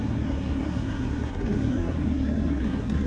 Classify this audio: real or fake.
fake